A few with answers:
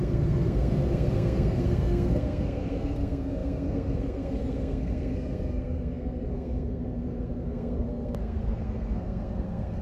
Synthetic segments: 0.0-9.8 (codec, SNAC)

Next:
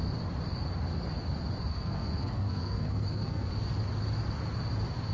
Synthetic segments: 1.7-3.5 (codec, SNAC)

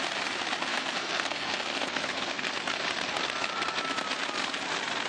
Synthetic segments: 0.7-2.5 (codec, SNAC)

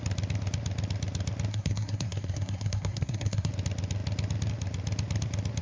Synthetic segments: 1.5-3.5 (codec, SNAC)

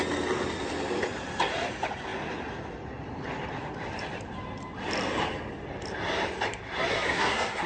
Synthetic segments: 6.9-7.7 (codec, SNAC)

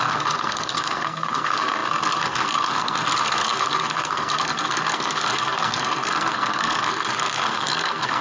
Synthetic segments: 0.0-8.2 (codec, SNAC)

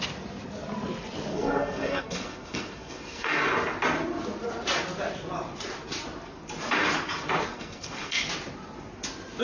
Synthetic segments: 1.3-3.4 (codec, SNAC); 7.5-8.3